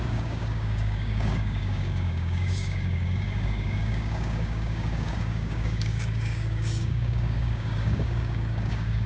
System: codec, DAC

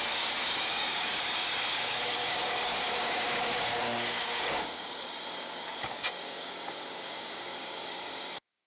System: codec, DAC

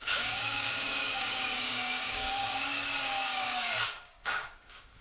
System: codec, DAC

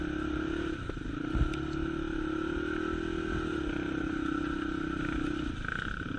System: none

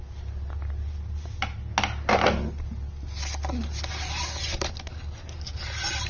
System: none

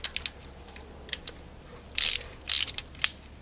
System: none